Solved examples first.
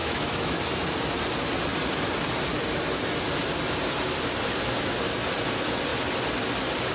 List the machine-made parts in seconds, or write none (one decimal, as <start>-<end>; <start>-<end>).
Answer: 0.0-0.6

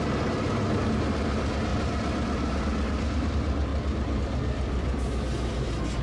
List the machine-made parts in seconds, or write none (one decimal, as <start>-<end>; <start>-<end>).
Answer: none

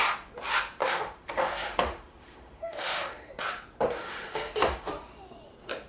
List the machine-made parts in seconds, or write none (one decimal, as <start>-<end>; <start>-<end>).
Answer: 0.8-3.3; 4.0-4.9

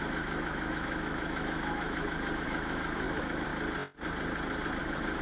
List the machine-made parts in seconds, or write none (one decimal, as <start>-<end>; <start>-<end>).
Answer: 0.0-3.5; 4.8-5.2

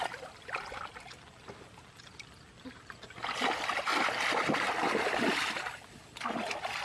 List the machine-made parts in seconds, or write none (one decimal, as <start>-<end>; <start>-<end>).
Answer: none